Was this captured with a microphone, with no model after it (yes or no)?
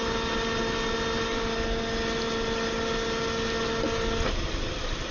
yes